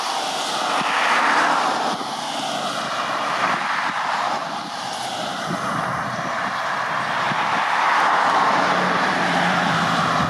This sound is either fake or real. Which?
fake